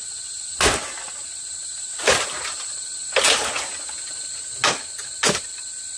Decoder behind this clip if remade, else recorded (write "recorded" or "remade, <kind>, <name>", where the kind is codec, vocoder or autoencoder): recorded